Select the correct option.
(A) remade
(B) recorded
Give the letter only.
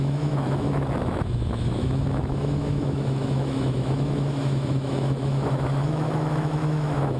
A